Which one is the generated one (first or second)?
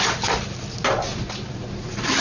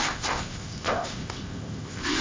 second